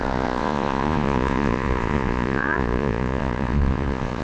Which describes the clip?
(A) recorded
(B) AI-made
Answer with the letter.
B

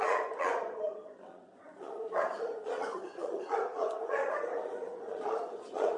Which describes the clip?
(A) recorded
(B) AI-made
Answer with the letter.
B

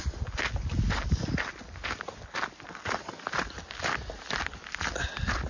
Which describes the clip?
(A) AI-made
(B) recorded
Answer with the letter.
B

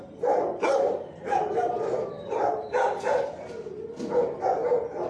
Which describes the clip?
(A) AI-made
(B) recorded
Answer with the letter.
B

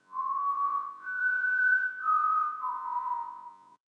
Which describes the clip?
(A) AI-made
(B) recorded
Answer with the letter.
A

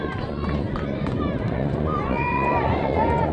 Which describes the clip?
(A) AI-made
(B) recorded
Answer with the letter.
A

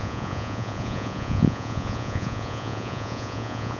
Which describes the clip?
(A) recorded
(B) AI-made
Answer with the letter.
B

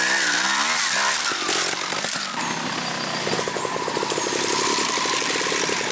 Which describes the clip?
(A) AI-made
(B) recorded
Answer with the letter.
B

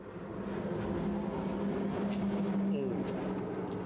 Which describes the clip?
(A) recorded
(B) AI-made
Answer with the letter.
A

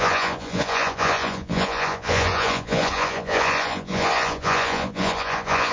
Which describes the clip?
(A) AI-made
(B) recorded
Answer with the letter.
A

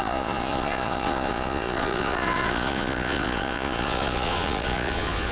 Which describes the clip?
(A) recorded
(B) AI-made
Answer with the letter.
B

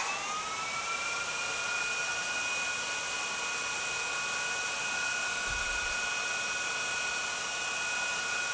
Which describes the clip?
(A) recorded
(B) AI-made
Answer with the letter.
A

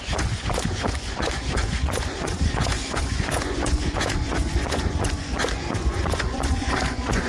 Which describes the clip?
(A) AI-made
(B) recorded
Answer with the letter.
A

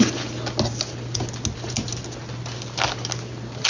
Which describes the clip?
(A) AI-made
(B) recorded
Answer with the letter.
B